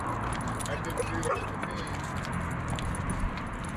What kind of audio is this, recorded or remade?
recorded